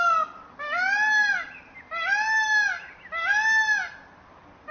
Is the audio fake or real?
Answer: real